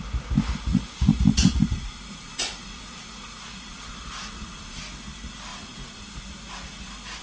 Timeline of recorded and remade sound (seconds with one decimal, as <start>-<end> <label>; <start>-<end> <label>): 0.0-0.7 recorded; 0.7-4.8 remade; 4.8-5.5 recorded; 5.5-6.2 remade; 6.2-7.2 recorded